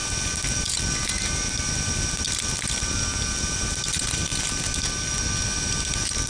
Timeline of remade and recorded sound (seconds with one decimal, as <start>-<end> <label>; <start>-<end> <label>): 0.0-6.3 recorded